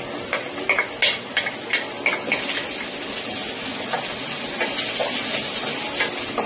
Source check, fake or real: real